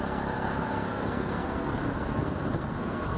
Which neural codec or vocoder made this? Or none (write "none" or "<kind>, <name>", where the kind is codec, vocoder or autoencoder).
codec, SNAC